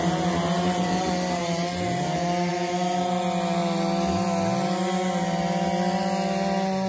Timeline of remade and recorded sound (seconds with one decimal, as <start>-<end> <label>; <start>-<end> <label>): 0.0-6.9 recorded